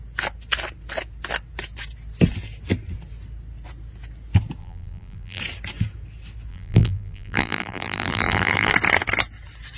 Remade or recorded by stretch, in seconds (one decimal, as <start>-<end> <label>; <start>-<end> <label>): 0.0-4.6 recorded; 4.6-5.4 remade; 5.4-6.5 recorded; 6.5-8.7 remade; 8.7-9.8 recorded